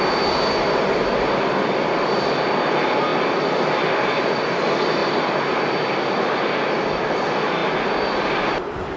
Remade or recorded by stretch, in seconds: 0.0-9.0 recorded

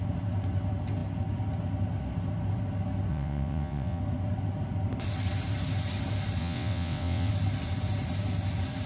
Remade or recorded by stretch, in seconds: 0.0-3.1 recorded; 3.1-4.0 remade; 4.0-6.4 recorded; 6.4-7.3 remade; 7.3-8.9 recorded

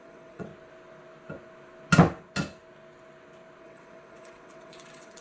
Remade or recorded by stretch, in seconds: 0.0-0.5 remade; 0.5-3.6 recorded; 3.6-5.2 remade

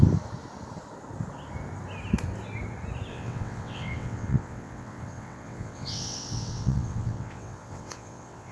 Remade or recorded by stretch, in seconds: 0.0-3.1 recorded; 3.1-8.5 remade

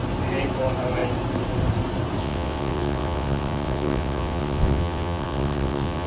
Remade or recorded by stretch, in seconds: 0.0-2.2 recorded; 2.2-6.1 remade

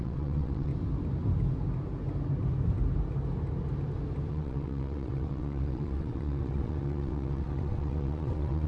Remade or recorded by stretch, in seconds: 0.0-0.7 remade; 0.7-4.3 recorded; 4.3-8.7 remade